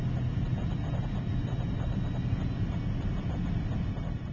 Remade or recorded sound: recorded